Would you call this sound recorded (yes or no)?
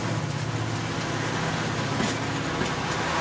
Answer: yes